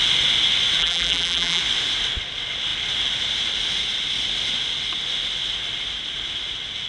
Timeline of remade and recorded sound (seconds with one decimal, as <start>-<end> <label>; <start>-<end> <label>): 0.0-0.8 recorded; 0.8-1.6 remade; 1.6-6.9 recorded